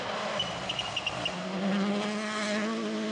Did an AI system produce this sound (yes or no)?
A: no